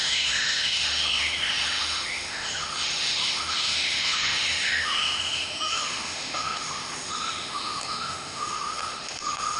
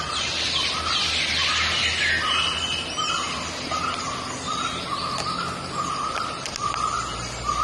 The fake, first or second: first